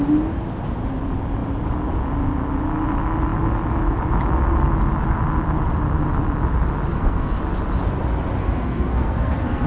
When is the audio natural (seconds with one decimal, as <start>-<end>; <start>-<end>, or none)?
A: 0.0-6.9; 7.4-8.4